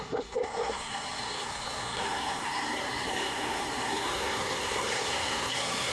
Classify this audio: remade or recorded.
remade